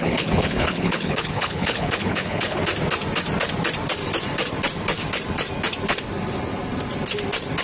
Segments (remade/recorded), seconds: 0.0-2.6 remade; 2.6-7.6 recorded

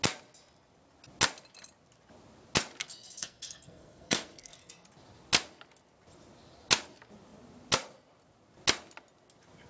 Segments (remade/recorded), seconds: 0.0-2.8 recorded; 2.8-4.7 remade; 4.7-9.7 recorded

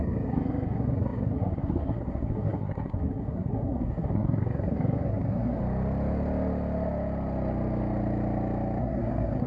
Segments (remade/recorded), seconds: 0.0-5.6 remade; 5.6-8.8 recorded; 8.8-9.5 remade

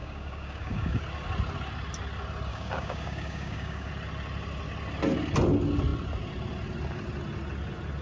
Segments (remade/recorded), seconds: 0.0-1.0 remade; 1.0-2.5 recorded; 2.5-3.9 remade; 3.9-8.0 recorded

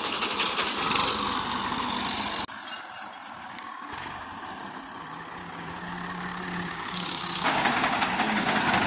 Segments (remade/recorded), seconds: 0.0-3.6 recorded; 3.6-4.6 remade; 4.6-5.4 recorded; 5.4-8.9 remade